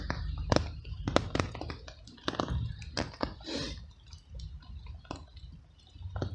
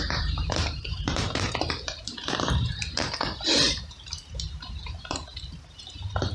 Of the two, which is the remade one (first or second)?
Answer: second